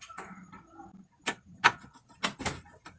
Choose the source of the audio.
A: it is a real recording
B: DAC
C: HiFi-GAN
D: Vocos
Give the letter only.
A